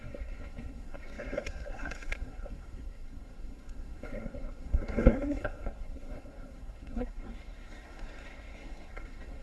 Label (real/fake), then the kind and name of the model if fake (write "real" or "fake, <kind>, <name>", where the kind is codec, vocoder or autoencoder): fake, codec, SNAC